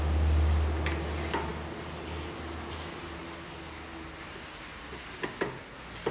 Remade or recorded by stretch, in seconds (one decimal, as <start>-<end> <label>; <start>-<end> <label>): 0.0-6.1 recorded